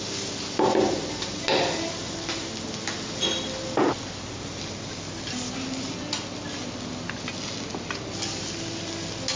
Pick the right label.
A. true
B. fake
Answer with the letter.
A